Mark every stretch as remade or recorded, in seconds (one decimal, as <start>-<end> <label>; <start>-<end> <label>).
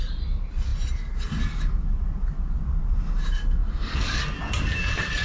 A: 0.0-5.2 recorded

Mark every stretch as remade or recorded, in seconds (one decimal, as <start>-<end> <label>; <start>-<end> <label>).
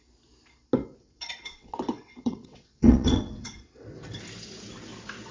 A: 0.0-1.0 recorded; 1.0-3.6 remade; 3.6-5.3 recorded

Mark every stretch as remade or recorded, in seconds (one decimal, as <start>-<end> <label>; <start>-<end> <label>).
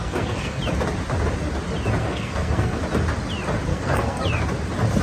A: 0.0-0.6 remade; 0.6-2.0 recorded; 2.0-2.8 remade; 2.8-3.7 recorded; 3.7-4.2 remade; 4.2-5.0 recorded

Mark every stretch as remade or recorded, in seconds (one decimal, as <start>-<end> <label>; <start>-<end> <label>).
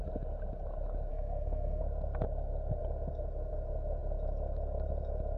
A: 0.0-1.1 recorded; 1.1-1.8 remade; 1.8-5.4 recorded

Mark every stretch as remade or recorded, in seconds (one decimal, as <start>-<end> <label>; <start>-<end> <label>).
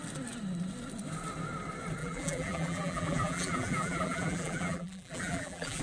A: 0.0-2.0 recorded; 2.0-5.8 remade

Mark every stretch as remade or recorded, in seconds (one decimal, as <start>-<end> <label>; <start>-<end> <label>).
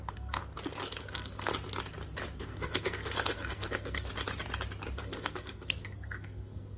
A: 0.0-0.4 remade; 0.4-1.0 recorded; 1.0-1.5 remade; 1.5-2.4 recorded; 2.4-4.1 remade; 4.1-5.0 recorded; 5.0-6.8 remade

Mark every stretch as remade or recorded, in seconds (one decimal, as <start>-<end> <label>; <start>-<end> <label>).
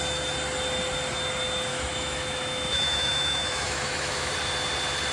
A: 0.0-1.7 recorded; 1.7-4.3 remade; 4.3-5.1 recorded